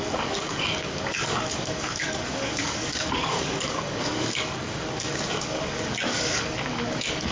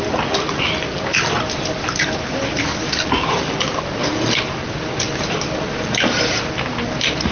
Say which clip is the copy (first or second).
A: first